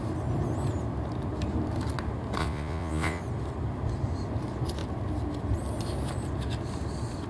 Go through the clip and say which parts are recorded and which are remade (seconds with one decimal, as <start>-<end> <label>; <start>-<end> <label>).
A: 0.0-2.4 recorded; 2.4-3.2 remade; 3.2-7.3 recorded